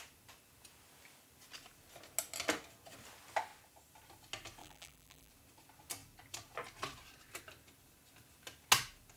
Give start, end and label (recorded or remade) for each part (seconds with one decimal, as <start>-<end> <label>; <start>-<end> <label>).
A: 0.0-4.6 recorded; 4.6-5.3 remade; 5.3-9.2 recorded